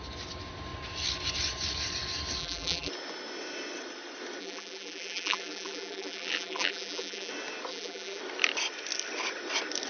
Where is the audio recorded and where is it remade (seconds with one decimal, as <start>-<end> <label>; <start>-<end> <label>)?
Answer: 0.0-2.4 recorded; 2.4-2.9 remade; 2.9-4.4 recorded; 4.4-7.3 remade; 7.3-7.7 recorded; 7.7-8.2 remade; 8.2-9.9 recorded